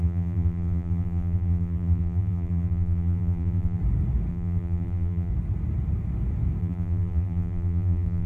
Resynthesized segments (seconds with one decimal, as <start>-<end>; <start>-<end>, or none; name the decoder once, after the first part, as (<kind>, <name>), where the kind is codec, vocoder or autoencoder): 0.0-3.8 (vocoder, BigVGAN v2); 4.3-5.3; 6.6-8.3